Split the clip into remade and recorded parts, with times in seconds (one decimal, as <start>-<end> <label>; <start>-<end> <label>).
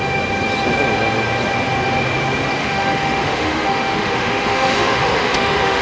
0.0-2.6 recorded; 2.6-5.8 remade